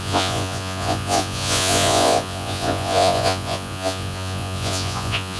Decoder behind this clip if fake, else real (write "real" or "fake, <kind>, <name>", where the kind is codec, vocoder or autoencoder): fake, vocoder, Vocos